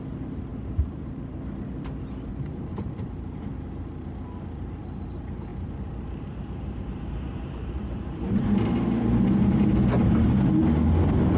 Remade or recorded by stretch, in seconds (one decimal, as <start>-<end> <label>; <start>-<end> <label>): 0.0-0.5 recorded; 0.5-1.4 remade; 1.4-2.3 recorded; 2.3-3.5 remade; 3.5-5.5 recorded; 5.5-10.6 remade; 10.6-11.4 recorded